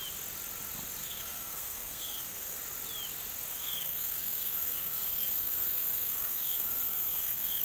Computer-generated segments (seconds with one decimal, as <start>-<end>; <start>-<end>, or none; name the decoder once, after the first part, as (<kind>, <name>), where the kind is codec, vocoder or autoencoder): 1.0-2.6 (codec, SNAC); 3.5-7.6